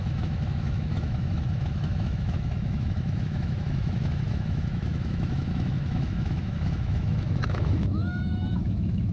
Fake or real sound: fake